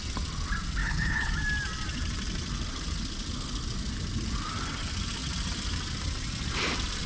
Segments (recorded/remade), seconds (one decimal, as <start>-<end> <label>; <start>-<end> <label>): 0.0-0.8 recorded; 0.8-1.3 remade; 1.3-7.1 recorded